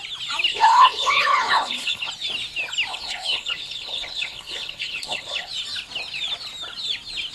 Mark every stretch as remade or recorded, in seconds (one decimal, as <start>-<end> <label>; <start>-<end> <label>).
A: 0.0-0.5 recorded; 0.5-2.1 remade; 2.1-2.9 recorded; 2.9-5.5 remade; 5.5-7.3 recorded

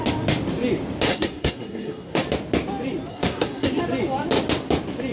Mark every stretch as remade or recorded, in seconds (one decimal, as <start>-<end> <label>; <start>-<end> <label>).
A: 0.0-1.1 recorded; 1.1-2.2 remade; 2.2-3.1 recorded; 3.1-3.8 remade; 3.8-5.1 recorded

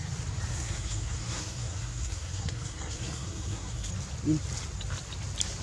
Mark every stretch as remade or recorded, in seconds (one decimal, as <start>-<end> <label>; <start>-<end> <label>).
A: 0.0-0.5 recorded; 0.5-3.9 remade; 3.9-5.6 recorded

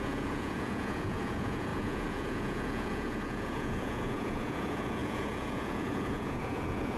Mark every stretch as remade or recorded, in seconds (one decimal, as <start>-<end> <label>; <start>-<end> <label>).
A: 0.0-7.0 remade

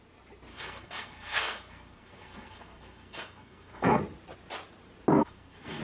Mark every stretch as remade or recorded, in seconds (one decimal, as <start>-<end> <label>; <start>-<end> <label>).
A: 0.0-0.5 recorded; 0.5-4.0 remade; 4.0-5.2 recorded; 5.2-5.8 remade

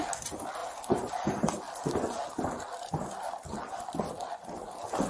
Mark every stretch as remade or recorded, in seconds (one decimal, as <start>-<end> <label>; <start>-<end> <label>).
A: 0.0-5.1 recorded